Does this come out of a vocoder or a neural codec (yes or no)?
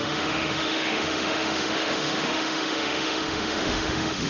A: yes